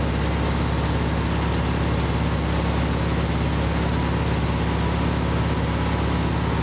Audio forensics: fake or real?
real